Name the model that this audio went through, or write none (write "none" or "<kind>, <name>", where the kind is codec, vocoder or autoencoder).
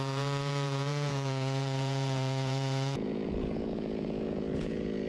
vocoder, Vocos